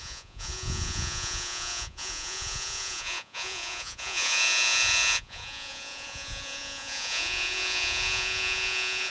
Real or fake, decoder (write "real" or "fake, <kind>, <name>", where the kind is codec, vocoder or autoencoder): fake, vocoder, Vocos